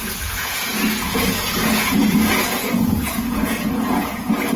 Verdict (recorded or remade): remade